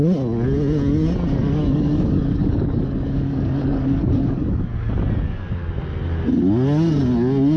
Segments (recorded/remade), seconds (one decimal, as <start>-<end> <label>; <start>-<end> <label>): 0.0-1.4 recorded; 1.4-4.7 remade; 4.7-7.6 recorded